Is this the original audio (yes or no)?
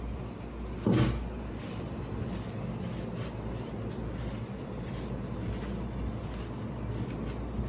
yes